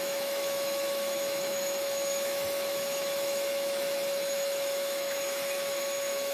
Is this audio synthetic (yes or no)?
yes